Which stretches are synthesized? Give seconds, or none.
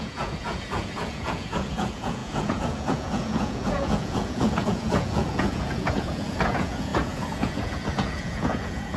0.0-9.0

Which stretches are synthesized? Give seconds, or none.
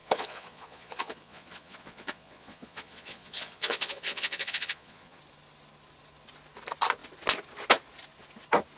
0.0-5.2